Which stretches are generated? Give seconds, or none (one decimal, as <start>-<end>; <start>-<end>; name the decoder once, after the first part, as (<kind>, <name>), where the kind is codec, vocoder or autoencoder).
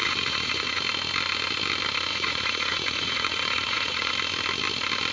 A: 0.0-0.8 (vocoder, Vocos); 2.1-4.1